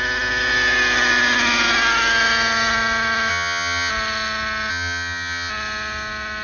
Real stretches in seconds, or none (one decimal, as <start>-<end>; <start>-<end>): 0.0-3.3; 3.9-4.7; 5.5-6.4